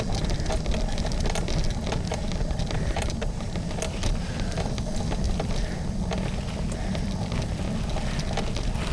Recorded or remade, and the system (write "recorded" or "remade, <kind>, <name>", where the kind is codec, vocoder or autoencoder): recorded